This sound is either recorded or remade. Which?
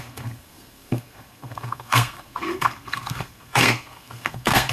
remade